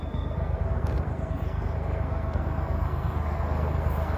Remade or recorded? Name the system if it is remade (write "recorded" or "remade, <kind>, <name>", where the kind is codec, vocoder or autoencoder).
remade, codec, SNAC